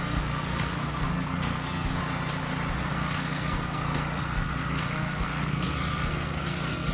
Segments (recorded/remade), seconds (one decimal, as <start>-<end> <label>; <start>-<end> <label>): 0.0-2.0 remade; 2.0-2.7 recorded; 2.7-6.9 remade